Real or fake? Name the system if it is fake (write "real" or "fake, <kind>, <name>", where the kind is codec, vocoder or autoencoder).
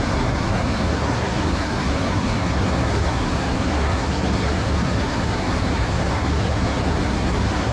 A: fake, codec, SNAC